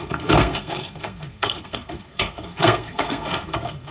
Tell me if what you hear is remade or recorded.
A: remade